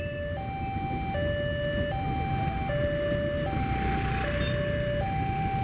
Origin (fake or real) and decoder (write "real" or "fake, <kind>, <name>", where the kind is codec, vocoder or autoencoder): real